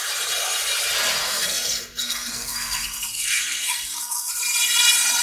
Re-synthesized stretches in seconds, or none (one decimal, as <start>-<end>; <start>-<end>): 1.2-4.3